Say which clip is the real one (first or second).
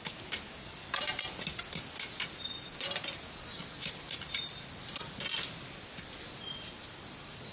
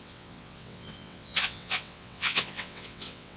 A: first